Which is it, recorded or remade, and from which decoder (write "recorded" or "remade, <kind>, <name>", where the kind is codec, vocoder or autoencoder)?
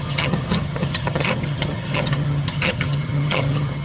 remade, vocoder, HiFi-GAN